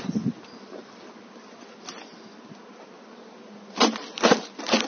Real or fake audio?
real